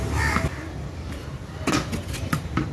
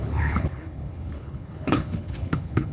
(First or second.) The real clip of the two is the first